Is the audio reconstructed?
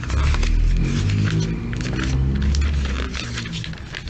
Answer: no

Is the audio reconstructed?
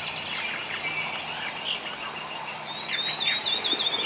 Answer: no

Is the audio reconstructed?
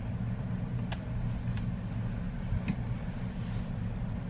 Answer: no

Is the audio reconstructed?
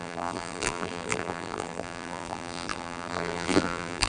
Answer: yes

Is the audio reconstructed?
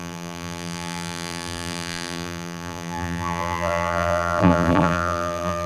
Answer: yes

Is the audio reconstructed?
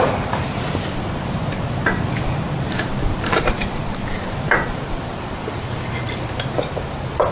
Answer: yes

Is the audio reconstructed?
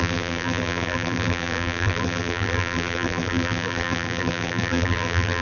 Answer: yes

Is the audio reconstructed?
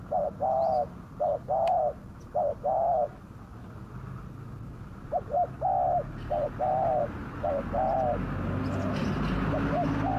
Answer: no